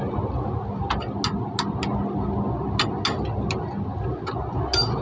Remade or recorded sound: recorded